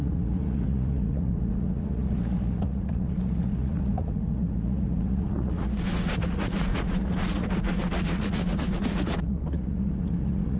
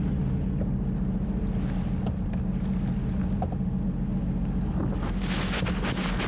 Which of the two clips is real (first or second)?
second